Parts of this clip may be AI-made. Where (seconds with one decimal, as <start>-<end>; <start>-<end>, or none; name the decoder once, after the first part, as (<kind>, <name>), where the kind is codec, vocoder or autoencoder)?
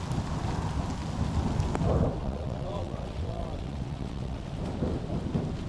2.2-4.5 (vocoder, WaveNeXt)